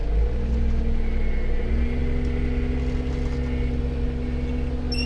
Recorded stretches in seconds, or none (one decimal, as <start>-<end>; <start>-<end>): 0.0-5.1